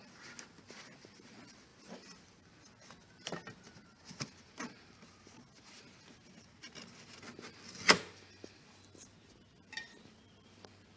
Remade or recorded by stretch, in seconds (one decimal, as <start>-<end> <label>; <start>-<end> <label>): 0.0-11.0 recorded